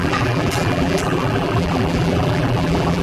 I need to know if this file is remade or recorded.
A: remade